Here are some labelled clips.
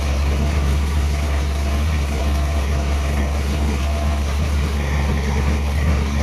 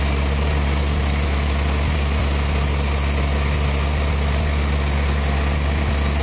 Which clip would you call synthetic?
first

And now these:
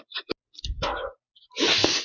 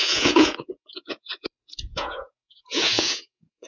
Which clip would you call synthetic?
second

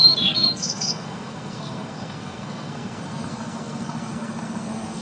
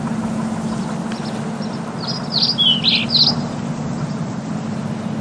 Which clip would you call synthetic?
first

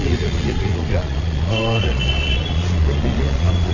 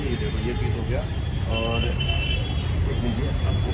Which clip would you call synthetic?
first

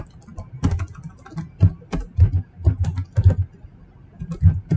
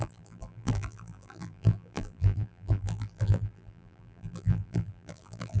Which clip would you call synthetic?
second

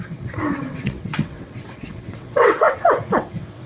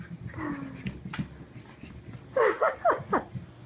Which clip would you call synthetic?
first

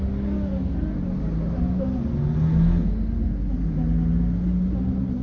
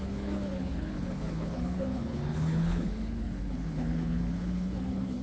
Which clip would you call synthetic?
second